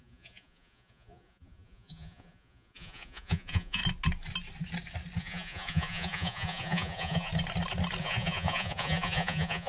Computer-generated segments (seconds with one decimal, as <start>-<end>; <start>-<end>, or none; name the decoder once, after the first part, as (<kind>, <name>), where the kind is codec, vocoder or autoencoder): 0.0-3.8 (vocoder, Vocos); 5.2-7.3; 8.0-9.7